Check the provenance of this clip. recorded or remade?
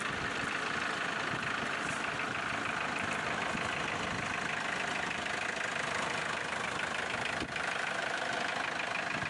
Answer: recorded